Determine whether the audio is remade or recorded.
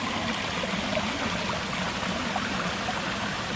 recorded